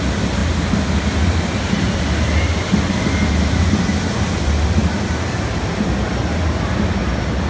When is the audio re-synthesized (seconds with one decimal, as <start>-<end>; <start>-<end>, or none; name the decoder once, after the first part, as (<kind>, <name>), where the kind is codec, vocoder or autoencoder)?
none